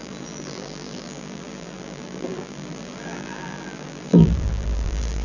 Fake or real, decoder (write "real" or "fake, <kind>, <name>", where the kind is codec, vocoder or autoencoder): fake, vocoder, BigVGAN v2